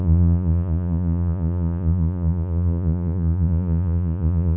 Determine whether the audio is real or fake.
fake